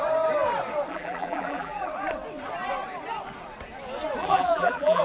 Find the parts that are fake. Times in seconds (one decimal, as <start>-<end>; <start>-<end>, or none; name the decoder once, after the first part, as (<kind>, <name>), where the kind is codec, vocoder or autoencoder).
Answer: 0.9-1.9 (vocoder, BigVGAN v2); 4.2-5.0